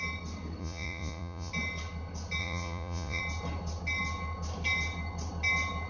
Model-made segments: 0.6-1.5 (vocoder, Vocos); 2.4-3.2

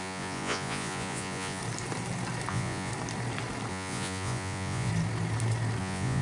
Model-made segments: 0.0-1.6 (vocoder, Vocos); 2.5-2.9; 3.7-4.9; 5.8-6.2